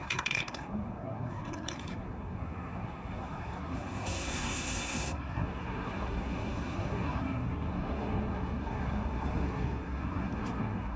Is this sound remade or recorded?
remade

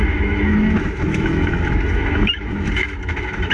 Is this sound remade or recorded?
remade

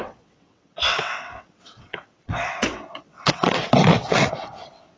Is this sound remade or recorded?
remade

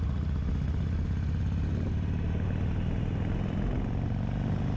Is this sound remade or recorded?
recorded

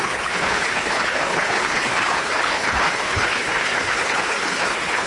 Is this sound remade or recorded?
remade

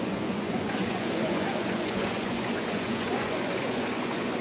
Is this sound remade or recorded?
remade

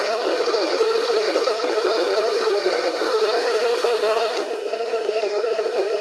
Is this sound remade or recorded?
remade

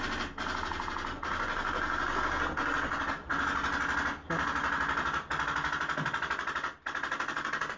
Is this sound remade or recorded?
recorded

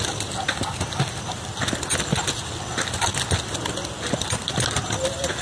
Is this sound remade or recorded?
recorded